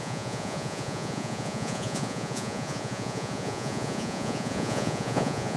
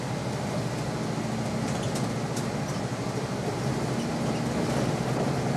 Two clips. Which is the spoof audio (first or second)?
first